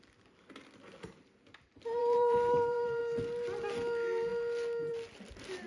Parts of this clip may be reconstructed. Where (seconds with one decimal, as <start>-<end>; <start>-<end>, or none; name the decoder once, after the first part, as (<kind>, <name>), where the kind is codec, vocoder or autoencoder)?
2.0-3.0 (vocoder, BigVGAN v2)